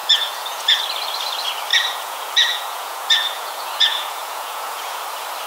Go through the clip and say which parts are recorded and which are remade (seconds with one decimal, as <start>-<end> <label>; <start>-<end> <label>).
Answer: 0.0-0.8 remade; 0.8-1.7 recorded; 1.7-5.0 remade; 5.0-5.5 recorded